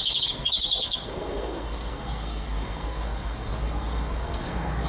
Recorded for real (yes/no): no